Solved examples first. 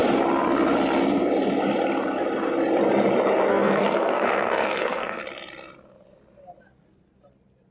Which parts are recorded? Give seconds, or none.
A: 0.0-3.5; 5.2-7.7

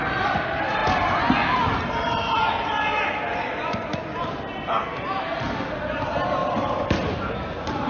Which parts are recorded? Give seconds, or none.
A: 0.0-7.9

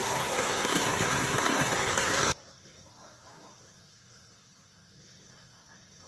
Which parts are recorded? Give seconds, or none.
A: none

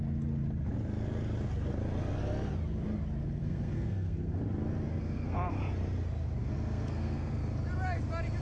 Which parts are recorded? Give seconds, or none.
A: 0.0-3.4; 4.4-4.9; 5.5-6.4; 7.3-8.4